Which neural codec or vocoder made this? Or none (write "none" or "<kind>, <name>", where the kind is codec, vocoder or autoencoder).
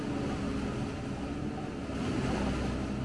none